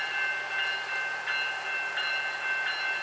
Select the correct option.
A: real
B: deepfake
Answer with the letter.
A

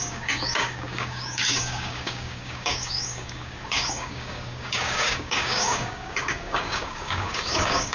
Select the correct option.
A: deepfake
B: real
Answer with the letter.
A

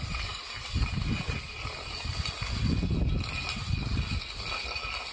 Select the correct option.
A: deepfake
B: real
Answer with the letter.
B